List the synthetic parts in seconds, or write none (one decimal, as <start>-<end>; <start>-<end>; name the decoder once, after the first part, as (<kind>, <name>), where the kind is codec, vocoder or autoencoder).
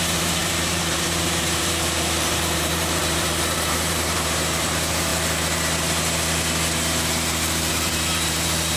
0.0-5.1 (vocoder, BigVGAN v2); 7.7-8.8